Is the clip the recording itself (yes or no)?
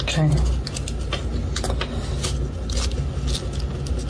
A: yes